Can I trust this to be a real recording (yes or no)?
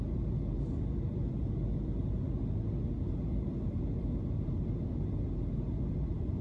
yes